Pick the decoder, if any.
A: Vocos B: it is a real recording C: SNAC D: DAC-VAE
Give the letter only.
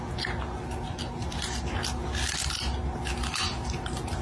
B